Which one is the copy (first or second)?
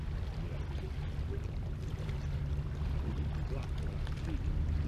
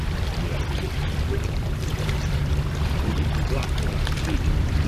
second